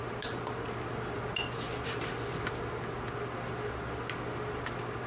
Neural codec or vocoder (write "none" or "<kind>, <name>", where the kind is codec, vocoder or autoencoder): none